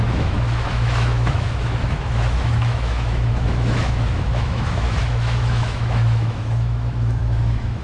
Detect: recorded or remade remade